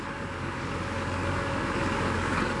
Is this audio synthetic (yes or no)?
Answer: yes